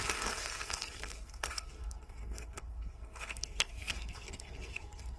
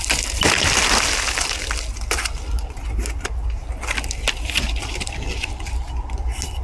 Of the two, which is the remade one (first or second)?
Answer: first